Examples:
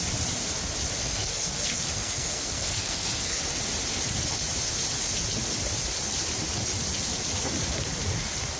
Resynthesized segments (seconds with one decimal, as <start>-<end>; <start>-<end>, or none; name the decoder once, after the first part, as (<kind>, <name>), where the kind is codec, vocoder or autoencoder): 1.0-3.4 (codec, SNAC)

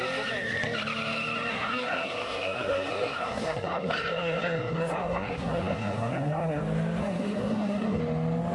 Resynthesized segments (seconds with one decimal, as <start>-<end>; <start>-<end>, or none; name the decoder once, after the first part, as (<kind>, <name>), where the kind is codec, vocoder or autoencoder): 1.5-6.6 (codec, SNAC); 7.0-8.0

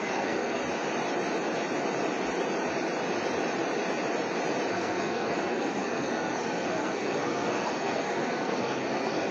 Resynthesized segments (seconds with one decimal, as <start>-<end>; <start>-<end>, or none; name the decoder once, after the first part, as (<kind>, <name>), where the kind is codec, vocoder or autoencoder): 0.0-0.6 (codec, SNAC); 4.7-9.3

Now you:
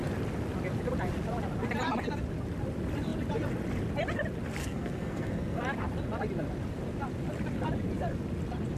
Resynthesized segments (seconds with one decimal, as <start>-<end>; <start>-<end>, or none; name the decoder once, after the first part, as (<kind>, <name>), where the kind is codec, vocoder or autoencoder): 4.6-5.6 (codec, SNAC)

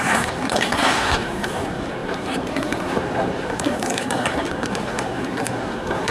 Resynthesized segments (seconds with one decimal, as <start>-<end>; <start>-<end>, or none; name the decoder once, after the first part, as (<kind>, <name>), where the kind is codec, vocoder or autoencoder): 0.0-6.1 (codec, SNAC)